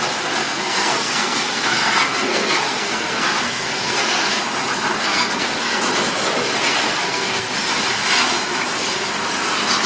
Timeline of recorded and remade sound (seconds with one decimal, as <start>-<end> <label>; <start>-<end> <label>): 0.0-0.4 recorded; 0.4-4.4 remade; 4.4-4.9 recorded; 4.9-5.8 remade; 5.8-6.6 recorded; 6.6-7.5 remade; 7.5-9.9 recorded